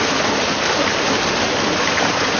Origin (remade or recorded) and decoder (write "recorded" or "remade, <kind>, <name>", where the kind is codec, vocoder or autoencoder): recorded